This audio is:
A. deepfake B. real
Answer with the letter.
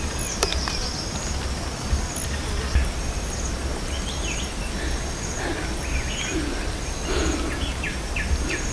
B